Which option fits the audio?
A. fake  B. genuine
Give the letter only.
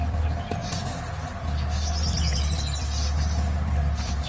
B